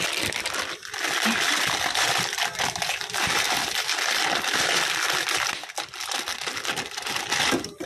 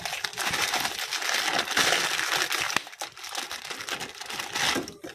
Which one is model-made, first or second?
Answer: first